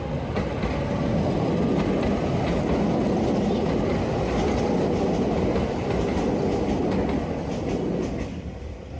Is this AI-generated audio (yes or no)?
no